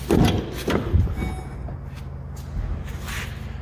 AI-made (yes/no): no